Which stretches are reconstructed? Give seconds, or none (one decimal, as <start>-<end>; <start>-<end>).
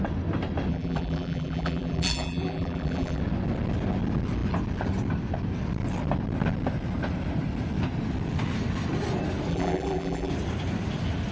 0.7-3.2; 9.5-10.3